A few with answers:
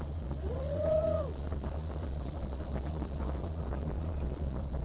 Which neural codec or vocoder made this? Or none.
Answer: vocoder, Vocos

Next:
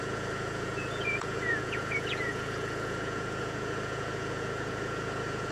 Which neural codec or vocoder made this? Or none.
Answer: vocoder, Vocos